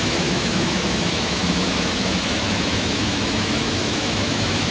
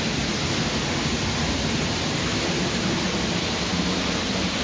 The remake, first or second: first